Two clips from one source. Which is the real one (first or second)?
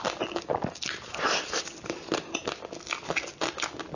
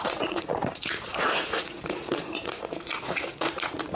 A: first